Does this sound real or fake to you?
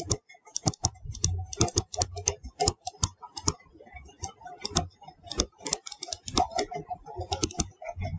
real